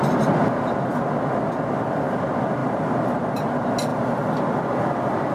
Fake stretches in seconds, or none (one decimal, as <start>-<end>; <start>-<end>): 2.6-3.5